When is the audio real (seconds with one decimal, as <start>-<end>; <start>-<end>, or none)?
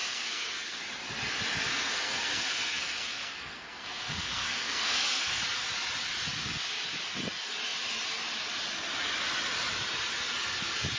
0.8-1.7; 5.3-11.0